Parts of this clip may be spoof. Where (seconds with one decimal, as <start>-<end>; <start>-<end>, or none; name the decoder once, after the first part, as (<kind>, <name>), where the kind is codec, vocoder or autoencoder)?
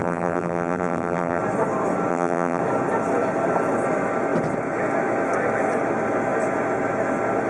0.0-1.4 (vocoder, BigVGAN v2); 2.1-2.6